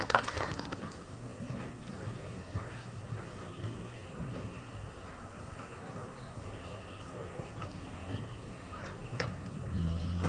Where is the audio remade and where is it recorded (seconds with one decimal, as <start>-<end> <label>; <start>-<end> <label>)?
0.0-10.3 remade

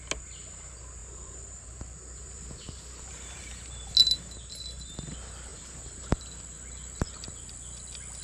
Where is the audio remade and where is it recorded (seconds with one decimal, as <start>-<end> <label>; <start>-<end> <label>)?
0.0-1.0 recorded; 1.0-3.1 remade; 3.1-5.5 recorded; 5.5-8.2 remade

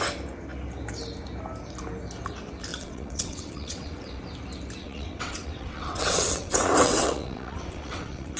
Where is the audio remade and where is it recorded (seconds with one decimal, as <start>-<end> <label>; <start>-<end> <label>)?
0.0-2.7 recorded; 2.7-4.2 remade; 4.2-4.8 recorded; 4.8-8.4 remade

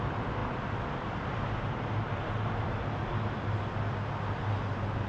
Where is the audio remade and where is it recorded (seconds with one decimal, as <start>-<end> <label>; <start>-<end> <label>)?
0.0-5.1 recorded

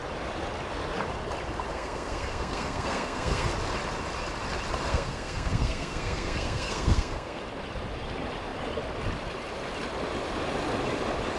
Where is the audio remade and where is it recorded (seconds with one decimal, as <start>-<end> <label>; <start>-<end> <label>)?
0.0-1.7 recorded; 1.7-3.5 remade; 3.5-4.9 recorded; 4.9-7.4 remade; 7.4-11.4 recorded

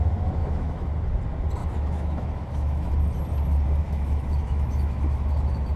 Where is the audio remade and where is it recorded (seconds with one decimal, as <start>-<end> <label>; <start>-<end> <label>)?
0.0-0.4 recorded; 0.4-0.9 remade; 0.9-1.6 recorded; 1.6-2.9 remade; 2.9-3.8 recorded; 3.8-5.8 remade

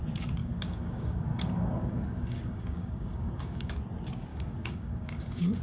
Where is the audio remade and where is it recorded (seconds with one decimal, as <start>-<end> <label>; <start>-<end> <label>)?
0.0-0.4 recorded; 0.4-3.8 remade; 3.8-4.3 recorded; 4.3-5.6 remade